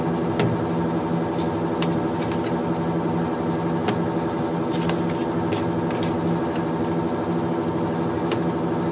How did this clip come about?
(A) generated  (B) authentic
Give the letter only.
B